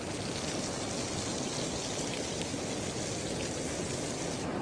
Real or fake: real